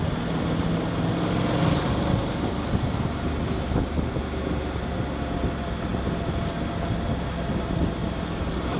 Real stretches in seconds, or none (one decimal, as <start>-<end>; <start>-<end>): 0.0-8.8